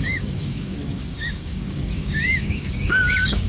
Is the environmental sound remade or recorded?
remade